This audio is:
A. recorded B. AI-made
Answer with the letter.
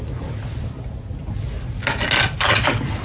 A